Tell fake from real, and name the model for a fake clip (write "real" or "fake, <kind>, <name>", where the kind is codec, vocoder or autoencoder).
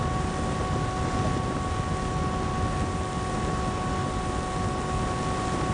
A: real